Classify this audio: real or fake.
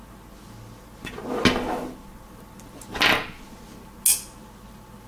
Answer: real